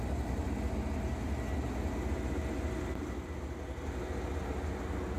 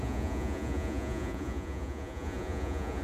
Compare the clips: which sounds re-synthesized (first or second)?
second